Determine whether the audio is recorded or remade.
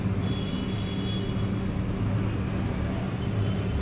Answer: recorded